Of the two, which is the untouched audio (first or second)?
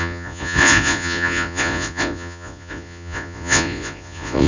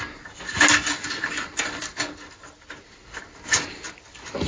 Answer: second